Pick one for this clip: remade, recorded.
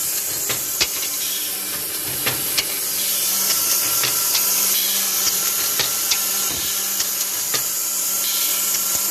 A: recorded